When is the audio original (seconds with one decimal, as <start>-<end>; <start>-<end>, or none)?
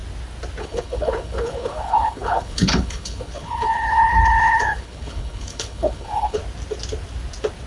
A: 0.0-0.6; 6.4-7.7